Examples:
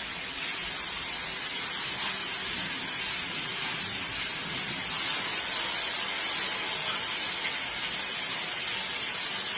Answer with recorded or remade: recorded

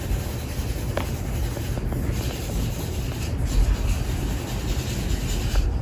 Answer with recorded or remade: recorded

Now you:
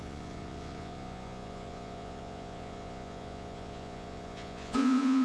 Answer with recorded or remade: remade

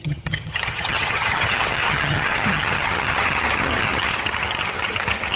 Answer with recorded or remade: remade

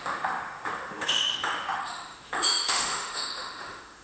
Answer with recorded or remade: remade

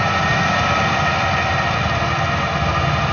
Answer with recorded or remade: recorded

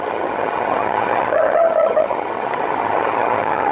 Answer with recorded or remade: remade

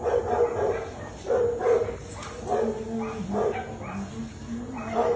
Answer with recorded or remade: recorded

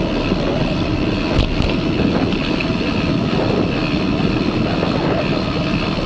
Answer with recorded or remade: recorded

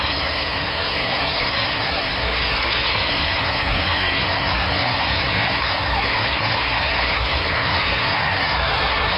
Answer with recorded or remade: remade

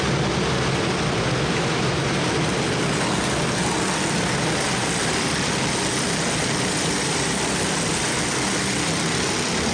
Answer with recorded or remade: recorded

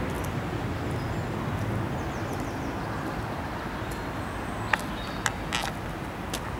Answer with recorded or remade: recorded